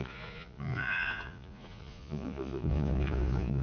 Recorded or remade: remade